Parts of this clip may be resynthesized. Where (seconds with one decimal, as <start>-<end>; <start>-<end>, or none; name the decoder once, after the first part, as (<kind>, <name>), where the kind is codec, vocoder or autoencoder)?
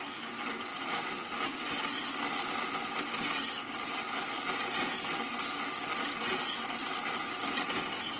none